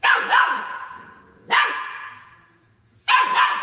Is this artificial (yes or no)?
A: yes